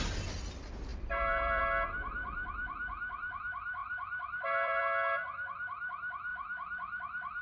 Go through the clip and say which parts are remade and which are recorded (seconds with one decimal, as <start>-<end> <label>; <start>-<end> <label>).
0.0-0.9 recorded; 0.9-1.6 remade; 1.6-3.8 recorded; 3.8-4.8 remade; 4.8-6.3 recorded; 6.3-7.4 remade